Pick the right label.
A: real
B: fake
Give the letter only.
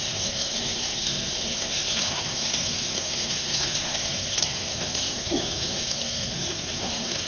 B